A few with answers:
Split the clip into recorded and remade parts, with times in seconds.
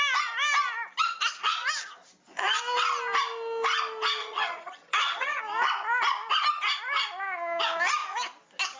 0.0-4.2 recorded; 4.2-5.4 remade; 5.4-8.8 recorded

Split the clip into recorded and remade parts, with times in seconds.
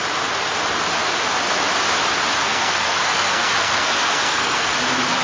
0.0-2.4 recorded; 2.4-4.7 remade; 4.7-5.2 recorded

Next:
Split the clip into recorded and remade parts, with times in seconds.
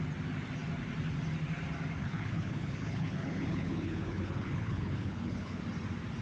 0.0-2.0 recorded; 2.0-5.6 remade; 5.6-6.2 recorded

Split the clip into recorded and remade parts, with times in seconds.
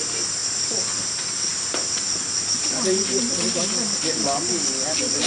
0.0-5.3 recorded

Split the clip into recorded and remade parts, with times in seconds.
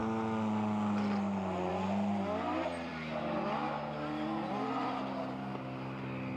0.0-6.4 recorded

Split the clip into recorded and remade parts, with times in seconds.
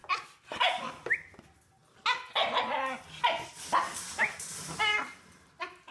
0.0-5.9 recorded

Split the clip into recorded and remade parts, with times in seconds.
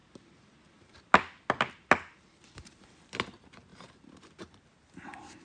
0.0-5.4 recorded